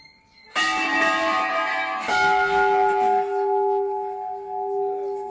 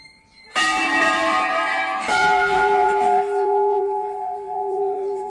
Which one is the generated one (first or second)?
second